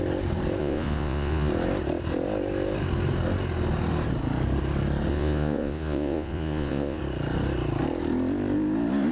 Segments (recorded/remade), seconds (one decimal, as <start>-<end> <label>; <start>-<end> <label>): 0.0-0.6 recorded; 0.6-1.5 remade; 1.5-5.1 recorded; 5.1-7.0 remade; 7.0-9.1 recorded